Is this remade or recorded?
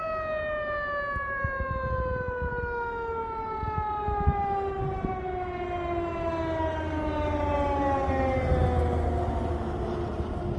recorded